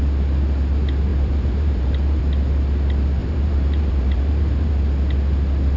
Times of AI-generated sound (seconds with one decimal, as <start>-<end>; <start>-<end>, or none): 1.1-2.2; 3.2-4.7